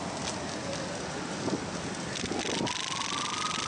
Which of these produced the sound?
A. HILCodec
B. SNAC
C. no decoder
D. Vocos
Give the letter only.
C